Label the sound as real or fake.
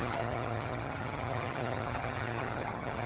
fake